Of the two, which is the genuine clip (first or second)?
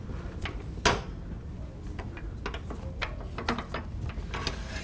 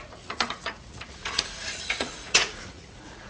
first